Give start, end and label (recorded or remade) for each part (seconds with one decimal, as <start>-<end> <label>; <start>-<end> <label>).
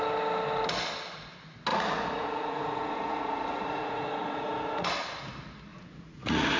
0.0-1.7 recorded; 1.7-4.9 remade; 4.9-5.7 recorded; 5.7-6.6 remade